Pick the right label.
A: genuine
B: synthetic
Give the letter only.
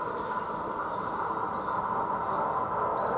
A